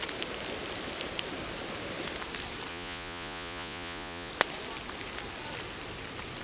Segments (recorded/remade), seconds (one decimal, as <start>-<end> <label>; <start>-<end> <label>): 0.0-2.7 recorded; 2.7-4.3 remade; 4.3-6.4 recorded